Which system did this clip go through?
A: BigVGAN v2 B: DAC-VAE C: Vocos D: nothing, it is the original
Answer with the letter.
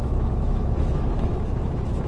B